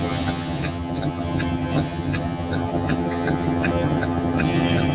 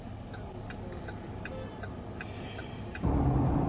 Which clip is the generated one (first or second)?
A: first